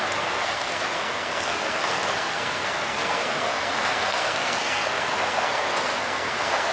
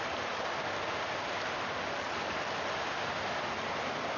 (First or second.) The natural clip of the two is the second